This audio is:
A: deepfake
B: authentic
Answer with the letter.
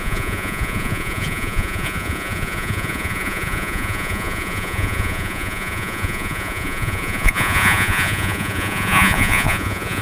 A